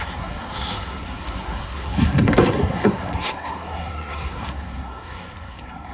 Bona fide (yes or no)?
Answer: no